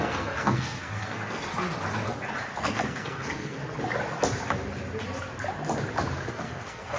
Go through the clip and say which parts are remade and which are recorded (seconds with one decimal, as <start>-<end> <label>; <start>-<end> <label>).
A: 0.0-1.5 remade; 1.5-2.6 recorded; 2.6-3.6 remade; 3.6-6.3 recorded; 6.3-7.0 remade